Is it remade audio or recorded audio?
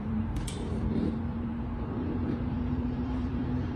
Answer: remade